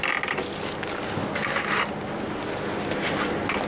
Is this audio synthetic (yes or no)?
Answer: no